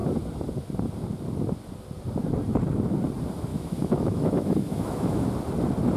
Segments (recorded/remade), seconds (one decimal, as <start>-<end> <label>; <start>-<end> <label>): 0.0-3.5 recorded; 3.5-5.3 remade; 5.3-6.0 recorded